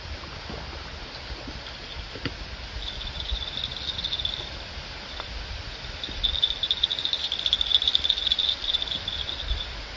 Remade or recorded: recorded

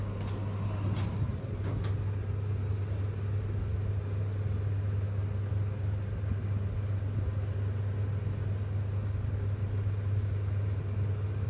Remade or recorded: recorded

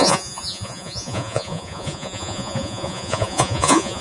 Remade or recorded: remade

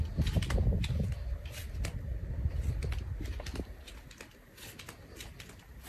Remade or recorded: recorded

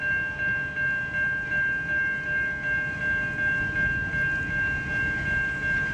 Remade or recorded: recorded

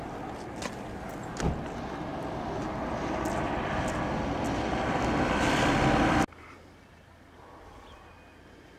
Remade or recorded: recorded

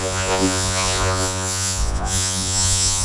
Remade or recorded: remade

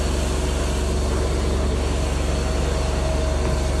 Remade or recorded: recorded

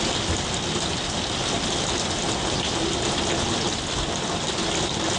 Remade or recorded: recorded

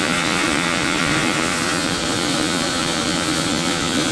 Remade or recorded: remade